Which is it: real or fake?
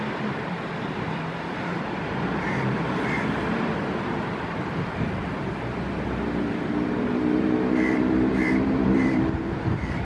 fake